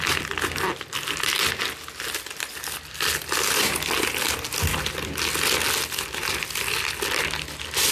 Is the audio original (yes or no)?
yes